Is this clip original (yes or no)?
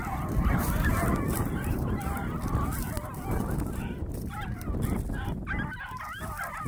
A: yes